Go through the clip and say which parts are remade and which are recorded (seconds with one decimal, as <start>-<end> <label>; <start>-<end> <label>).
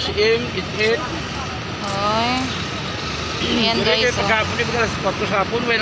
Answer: 0.0-5.8 recorded